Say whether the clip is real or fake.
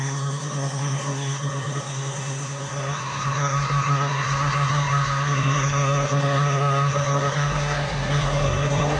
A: fake